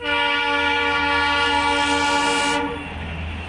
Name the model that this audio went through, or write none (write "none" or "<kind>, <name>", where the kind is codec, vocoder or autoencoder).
none